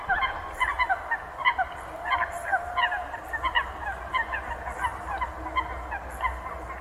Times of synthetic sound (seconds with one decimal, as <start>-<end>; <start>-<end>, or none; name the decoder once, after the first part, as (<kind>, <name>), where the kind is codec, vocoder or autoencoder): none